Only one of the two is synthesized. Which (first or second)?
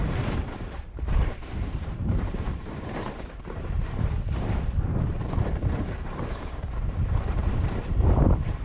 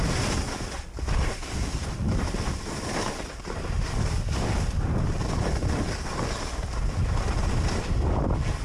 first